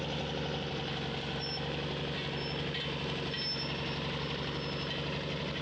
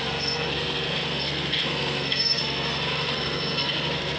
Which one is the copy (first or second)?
second